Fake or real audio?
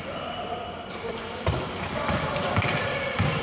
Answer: real